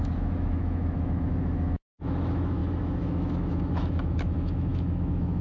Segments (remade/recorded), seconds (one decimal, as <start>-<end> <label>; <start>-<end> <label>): 0.0-5.4 remade